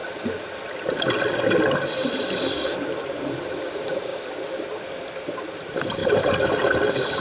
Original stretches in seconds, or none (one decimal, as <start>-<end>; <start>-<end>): 0.0-2.3; 4.1-5.2